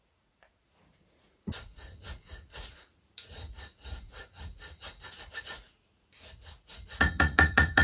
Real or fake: fake